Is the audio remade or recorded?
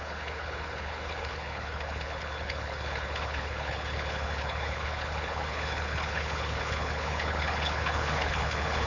remade